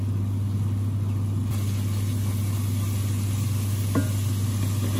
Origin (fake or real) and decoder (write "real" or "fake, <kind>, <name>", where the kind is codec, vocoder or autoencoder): real